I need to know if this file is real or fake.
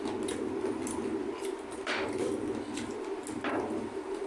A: real